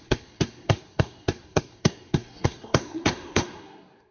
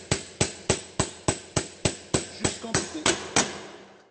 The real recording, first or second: second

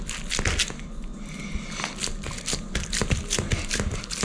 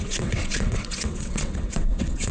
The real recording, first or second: first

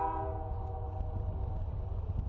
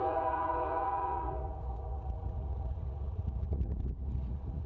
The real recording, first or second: first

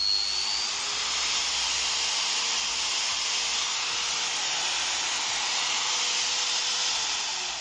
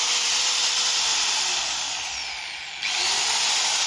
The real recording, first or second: first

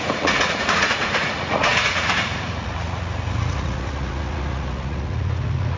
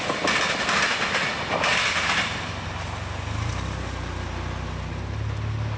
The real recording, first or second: second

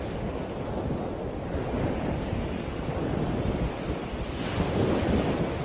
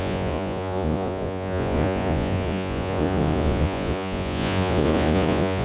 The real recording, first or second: first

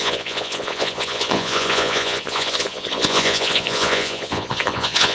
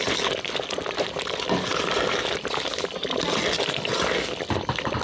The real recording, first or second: second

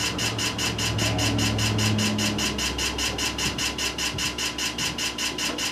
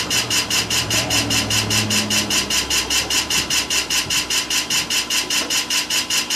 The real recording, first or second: first